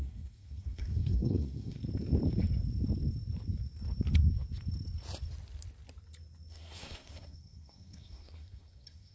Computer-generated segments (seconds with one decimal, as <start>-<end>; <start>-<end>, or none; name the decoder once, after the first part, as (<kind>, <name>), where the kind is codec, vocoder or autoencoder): 0.0-1.8 (codec, SNAC); 6.5-9.1